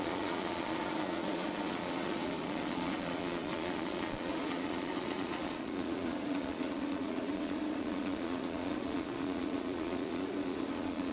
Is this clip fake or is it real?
fake